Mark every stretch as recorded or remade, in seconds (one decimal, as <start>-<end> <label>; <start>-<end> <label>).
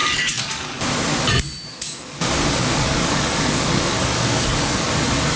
0.0-0.8 remade; 0.8-1.7 recorded; 1.7-4.9 remade; 4.9-5.4 recorded